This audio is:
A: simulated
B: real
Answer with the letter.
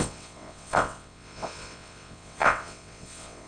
A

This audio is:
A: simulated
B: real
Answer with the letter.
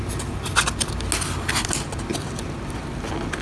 B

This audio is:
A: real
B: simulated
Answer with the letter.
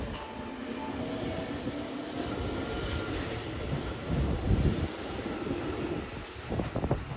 A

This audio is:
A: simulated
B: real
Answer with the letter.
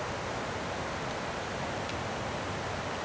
B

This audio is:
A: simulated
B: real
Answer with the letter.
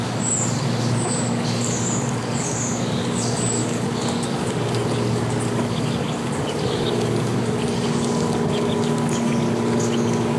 A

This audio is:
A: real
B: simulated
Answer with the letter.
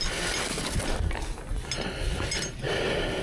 A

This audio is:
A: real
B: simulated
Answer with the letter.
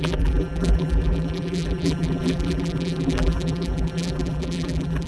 B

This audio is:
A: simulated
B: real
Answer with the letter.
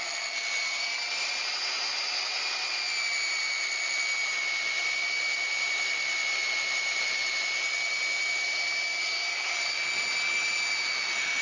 B